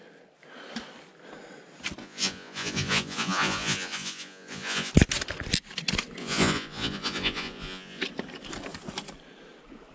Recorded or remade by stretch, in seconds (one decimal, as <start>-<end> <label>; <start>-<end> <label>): 0.0-2.0 recorded; 2.0-4.9 remade; 4.9-6.2 recorded; 6.2-8.0 remade; 8.0-9.9 recorded